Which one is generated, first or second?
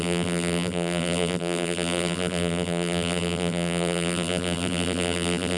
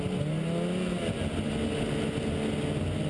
first